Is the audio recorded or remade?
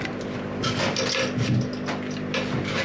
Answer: recorded